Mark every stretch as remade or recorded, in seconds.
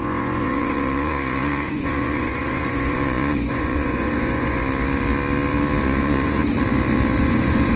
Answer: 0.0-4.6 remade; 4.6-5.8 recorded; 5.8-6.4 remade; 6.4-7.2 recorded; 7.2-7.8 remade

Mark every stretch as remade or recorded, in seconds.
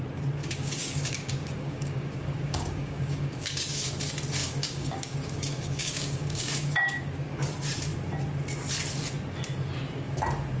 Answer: 0.0-0.4 recorded; 0.4-3.9 remade; 3.9-4.4 recorded; 4.4-7.4 remade; 7.4-10.6 recorded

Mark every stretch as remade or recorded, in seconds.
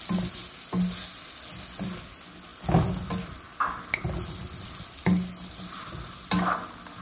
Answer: 0.0-7.0 recorded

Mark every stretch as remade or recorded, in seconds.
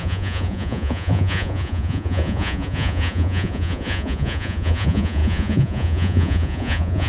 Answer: 0.0-7.1 remade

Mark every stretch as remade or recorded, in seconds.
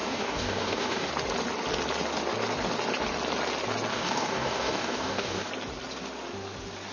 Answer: 0.0-1.1 remade; 1.1-3.9 recorded; 3.9-5.5 remade; 5.5-6.9 recorded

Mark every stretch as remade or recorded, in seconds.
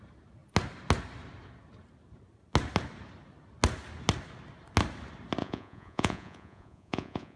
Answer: 0.0-5.4 recorded; 5.4-7.4 remade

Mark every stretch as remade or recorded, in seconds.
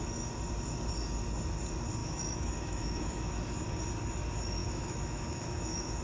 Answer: 0.0-2.0 recorded; 2.0-3.3 remade; 3.3-4.6 recorded; 4.6-6.0 remade